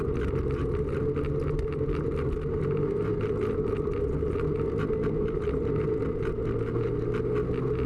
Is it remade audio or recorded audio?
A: recorded